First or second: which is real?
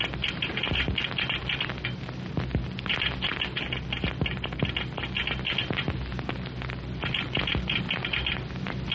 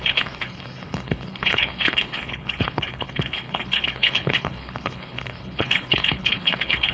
first